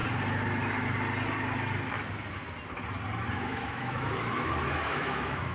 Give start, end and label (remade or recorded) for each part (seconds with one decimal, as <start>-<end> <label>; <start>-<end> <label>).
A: 0.0-3.3 recorded; 3.3-5.5 remade